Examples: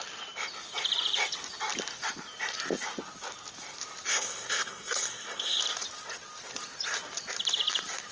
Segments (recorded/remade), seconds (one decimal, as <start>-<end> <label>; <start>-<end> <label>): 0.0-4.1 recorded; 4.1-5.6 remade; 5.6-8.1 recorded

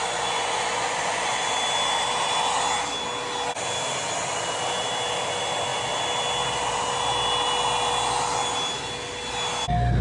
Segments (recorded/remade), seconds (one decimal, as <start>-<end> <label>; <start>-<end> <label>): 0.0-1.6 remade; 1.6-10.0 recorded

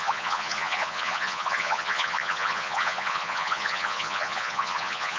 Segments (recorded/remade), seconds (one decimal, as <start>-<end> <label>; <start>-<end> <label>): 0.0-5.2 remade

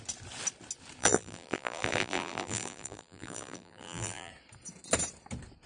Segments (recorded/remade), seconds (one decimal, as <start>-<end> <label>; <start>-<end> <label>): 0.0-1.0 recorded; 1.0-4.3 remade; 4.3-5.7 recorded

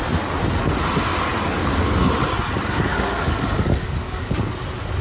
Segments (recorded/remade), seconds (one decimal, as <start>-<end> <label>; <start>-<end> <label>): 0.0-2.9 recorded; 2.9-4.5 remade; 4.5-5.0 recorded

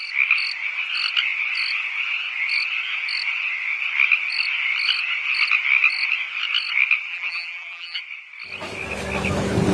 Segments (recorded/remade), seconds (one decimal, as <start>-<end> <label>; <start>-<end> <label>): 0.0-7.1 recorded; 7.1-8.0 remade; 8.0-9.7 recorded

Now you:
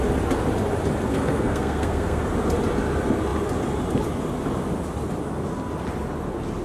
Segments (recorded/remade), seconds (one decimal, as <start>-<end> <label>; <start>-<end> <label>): 0.0-1.1 recorded; 1.1-2.2 remade; 2.2-6.6 recorded